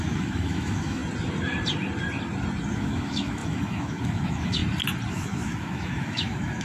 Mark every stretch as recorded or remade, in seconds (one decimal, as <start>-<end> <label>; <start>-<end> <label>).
0.0-1.0 remade; 1.0-2.7 recorded; 2.7-4.6 remade; 4.6-5.1 recorded; 5.1-6.6 remade